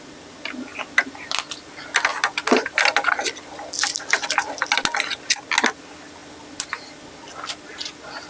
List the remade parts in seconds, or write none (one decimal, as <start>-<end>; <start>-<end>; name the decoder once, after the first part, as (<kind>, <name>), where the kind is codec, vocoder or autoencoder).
none